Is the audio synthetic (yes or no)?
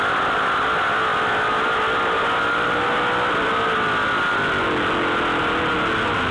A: no